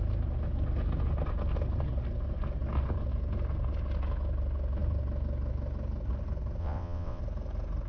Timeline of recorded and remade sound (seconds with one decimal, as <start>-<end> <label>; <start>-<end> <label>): 0.0-6.6 recorded; 6.6-7.2 remade; 7.2-7.9 recorded